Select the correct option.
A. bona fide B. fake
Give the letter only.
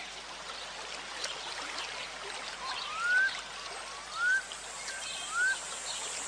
A